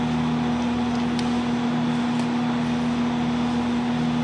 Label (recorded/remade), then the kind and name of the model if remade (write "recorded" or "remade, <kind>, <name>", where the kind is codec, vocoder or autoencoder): recorded